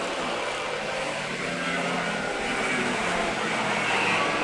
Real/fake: real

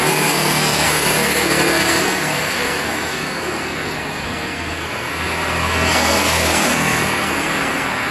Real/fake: fake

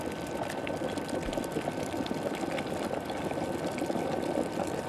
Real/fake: real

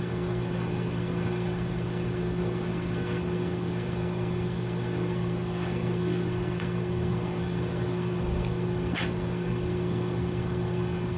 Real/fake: fake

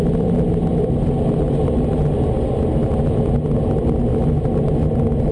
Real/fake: real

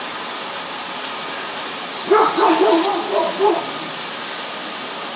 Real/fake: real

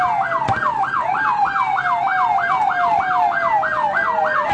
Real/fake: real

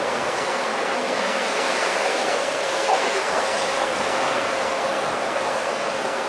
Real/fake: fake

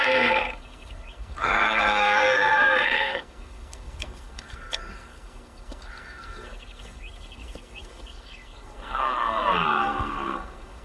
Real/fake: fake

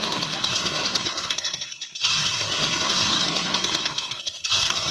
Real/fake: fake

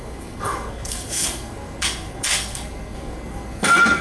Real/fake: fake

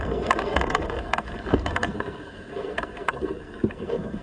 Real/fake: fake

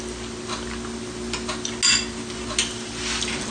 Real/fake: real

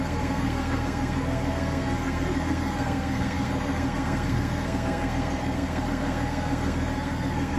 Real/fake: fake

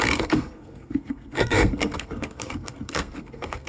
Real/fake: fake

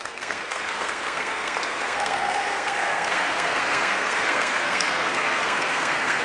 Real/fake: fake